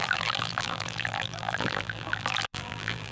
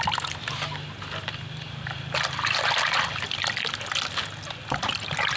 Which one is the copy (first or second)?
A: first